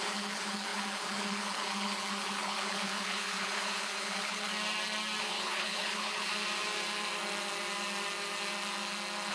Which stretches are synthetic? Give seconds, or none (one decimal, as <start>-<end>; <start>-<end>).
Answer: 0.0-4.5; 5.2-6.3